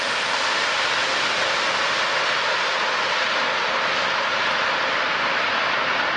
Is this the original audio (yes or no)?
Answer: no